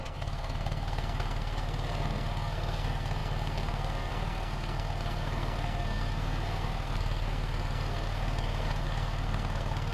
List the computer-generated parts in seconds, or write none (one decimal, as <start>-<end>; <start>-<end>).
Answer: 0.0-9.9